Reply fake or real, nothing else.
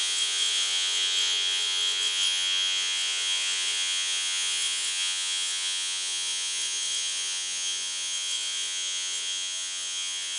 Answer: fake